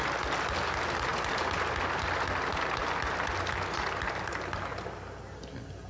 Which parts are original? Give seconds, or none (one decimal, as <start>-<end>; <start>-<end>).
0.0-5.9